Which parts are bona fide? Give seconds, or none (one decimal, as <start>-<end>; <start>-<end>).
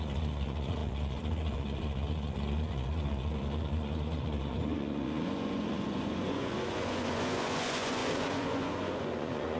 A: none